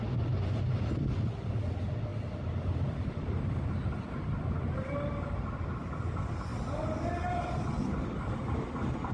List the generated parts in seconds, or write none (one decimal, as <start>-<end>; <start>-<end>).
none